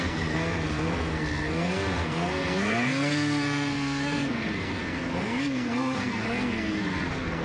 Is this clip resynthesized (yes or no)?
yes